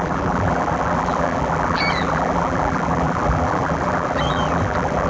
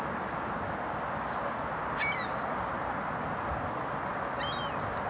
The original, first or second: second